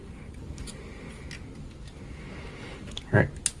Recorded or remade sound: recorded